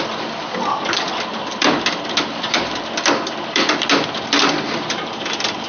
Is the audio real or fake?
real